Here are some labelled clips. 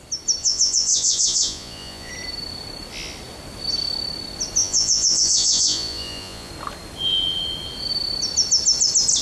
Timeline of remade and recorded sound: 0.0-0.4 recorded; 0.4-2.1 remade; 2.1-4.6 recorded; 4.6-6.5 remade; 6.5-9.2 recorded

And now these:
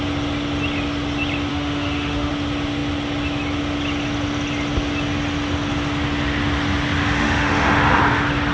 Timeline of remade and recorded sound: 0.0-1.5 recorded; 1.5-2.3 remade; 2.3-7.0 recorded; 7.0-8.0 remade; 8.0-8.5 recorded